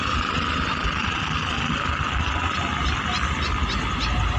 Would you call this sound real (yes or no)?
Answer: yes